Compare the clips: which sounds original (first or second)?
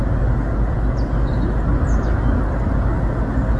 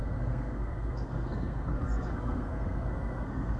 first